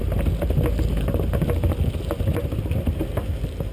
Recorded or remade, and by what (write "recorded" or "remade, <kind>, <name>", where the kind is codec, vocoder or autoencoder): recorded